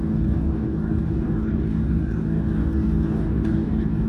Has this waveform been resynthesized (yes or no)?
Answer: yes